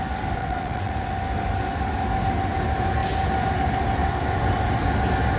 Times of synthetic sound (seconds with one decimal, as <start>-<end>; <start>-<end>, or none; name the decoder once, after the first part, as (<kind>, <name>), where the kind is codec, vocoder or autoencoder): 0.4-0.9 (vocoder, WaveNeXt)